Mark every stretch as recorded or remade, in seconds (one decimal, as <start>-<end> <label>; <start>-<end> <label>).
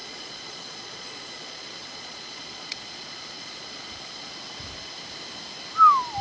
0.0-4.3 remade; 4.3-6.2 recorded